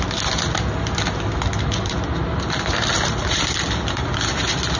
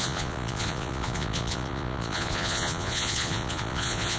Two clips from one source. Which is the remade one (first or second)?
second